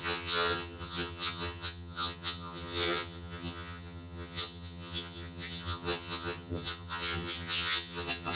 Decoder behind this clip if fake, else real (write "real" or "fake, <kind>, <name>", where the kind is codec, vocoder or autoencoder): fake, vocoder, HiFi-GAN